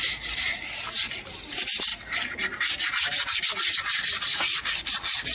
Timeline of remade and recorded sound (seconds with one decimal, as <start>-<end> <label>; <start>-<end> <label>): 0.0-5.3 recorded